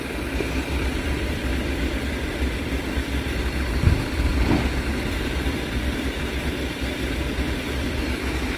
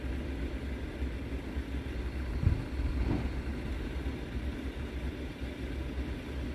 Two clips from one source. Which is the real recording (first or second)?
second